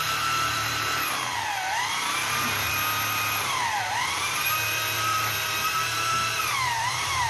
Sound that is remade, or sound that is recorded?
remade